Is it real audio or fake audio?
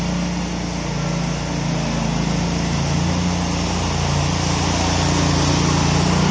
real